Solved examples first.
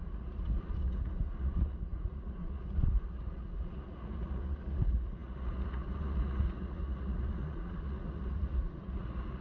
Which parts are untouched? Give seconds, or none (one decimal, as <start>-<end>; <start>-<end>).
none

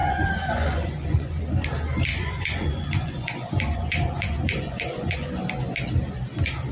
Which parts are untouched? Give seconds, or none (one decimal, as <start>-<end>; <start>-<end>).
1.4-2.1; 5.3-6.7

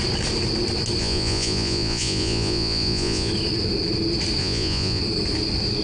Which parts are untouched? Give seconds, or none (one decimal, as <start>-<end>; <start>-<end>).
0.0-1.0; 3.3-4.4; 5.0-5.8

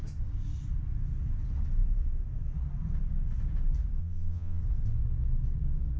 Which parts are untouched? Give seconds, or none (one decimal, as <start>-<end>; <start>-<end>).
0.0-4.0; 4.6-6.0

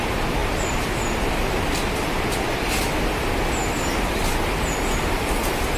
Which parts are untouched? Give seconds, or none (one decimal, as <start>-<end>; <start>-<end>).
0.0-5.8

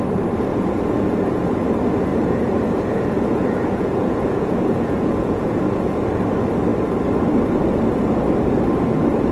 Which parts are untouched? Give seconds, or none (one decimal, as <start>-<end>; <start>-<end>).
0.0-0.5; 1.2-2.1; 5.6-9.3